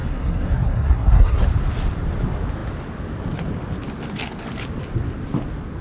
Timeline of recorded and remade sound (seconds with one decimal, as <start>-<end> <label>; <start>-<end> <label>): 0.0-1.4 remade; 1.4-5.8 recorded